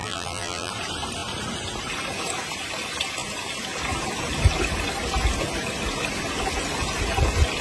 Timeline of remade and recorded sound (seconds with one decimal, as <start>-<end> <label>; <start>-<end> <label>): 0.0-0.7 remade; 0.7-7.6 recorded